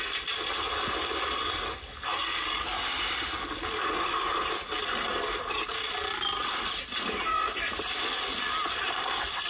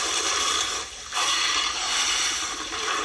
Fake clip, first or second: second